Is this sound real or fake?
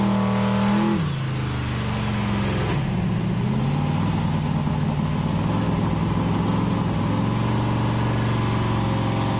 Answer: real